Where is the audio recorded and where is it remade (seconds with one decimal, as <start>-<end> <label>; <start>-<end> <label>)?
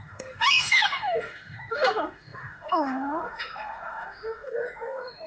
0.0-5.3 remade